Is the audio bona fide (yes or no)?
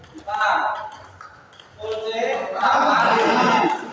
yes